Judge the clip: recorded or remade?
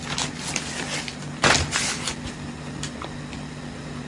recorded